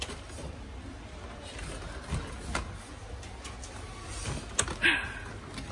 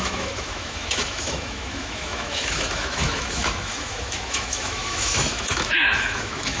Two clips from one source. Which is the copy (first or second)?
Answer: second